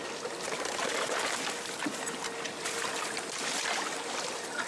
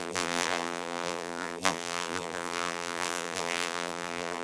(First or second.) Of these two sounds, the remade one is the second